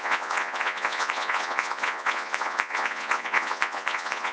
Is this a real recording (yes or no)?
no